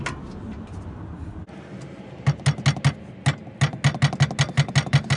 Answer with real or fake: real